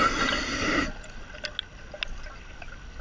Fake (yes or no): no